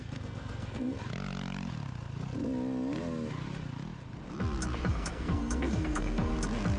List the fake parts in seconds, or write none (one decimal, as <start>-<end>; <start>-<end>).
0.0-1.0; 4.9-6.3